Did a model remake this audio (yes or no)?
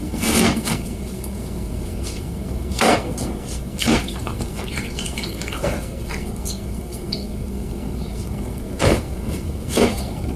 yes